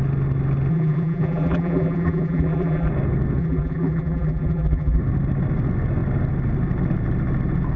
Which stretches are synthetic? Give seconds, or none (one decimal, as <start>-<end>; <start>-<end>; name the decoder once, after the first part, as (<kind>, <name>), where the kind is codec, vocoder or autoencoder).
0.7-2.9 (vocoder, BigVGAN v2); 3.4-5.0